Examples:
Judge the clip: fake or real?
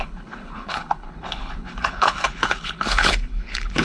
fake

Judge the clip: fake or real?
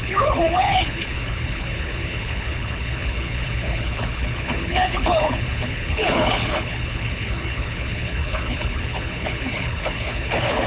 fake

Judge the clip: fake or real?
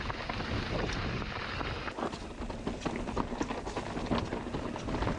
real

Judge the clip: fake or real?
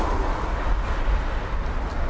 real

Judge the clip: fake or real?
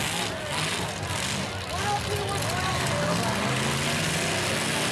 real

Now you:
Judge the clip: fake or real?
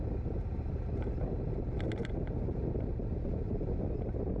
real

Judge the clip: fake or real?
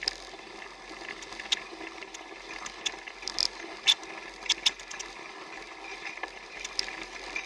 real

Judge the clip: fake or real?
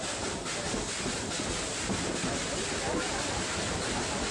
real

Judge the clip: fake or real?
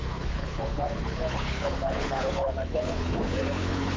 fake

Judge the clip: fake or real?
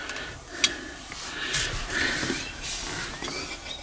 real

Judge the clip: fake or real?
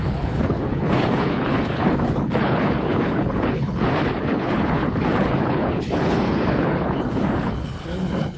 fake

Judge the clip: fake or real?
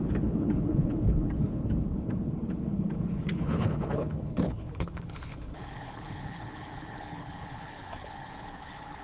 fake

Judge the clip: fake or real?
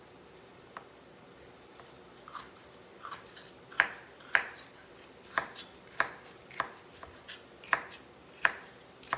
real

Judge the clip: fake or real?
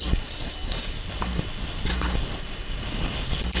fake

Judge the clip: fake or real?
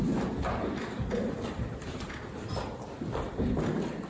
real